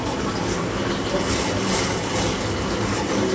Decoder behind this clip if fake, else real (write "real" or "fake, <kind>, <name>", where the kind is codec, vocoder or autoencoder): real